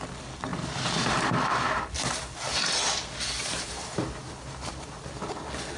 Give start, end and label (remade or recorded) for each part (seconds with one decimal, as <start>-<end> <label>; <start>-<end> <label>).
0.0-0.5 recorded; 0.5-1.9 remade; 1.9-2.5 recorded; 2.5-5.0 remade; 5.0-5.8 recorded